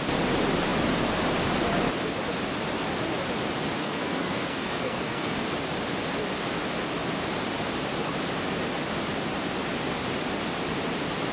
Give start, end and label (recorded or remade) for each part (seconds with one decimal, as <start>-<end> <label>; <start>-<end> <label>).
0.0-3.8 recorded; 3.8-5.4 remade; 5.4-11.3 recorded